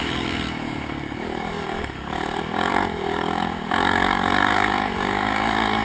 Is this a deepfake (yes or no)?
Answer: yes